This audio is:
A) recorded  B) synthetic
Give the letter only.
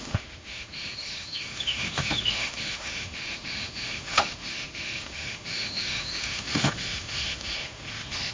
B